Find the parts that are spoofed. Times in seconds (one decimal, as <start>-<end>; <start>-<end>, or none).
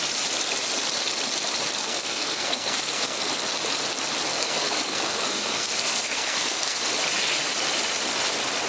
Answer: 1.8-3.2; 4.3-6.8